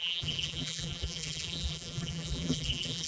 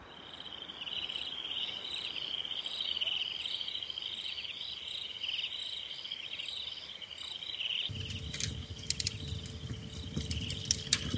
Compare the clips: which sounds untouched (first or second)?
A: second